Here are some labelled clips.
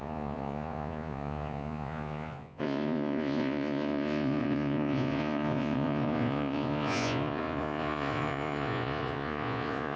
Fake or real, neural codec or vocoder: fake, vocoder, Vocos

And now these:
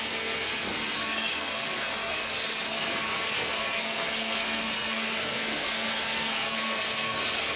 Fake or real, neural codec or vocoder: fake, codec, SNAC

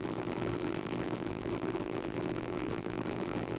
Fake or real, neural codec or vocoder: fake, vocoder, BigVGAN v2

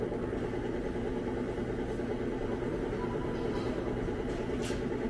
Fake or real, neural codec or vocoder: real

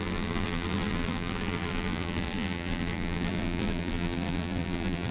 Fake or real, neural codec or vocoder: fake, vocoder, BigVGAN v2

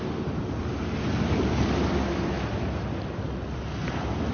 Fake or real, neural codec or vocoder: real